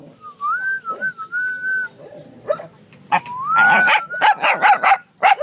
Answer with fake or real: real